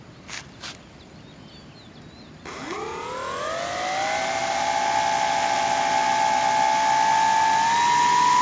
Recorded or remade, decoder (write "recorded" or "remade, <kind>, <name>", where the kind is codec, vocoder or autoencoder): recorded